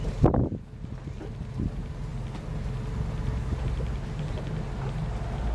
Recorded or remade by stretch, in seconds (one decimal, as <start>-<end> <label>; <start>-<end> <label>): 0.0-5.5 recorded